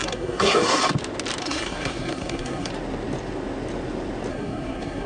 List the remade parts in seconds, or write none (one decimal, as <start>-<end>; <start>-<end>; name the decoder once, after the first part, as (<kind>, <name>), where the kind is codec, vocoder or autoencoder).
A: 0.0-0.8 (codec, SNAC); 1.4-2.7; 4.3-5.1